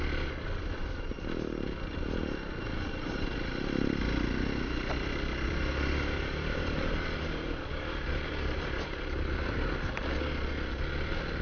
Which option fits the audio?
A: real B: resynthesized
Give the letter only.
A